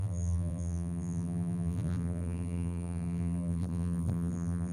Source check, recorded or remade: remade